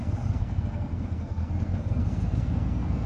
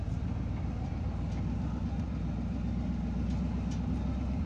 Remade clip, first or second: first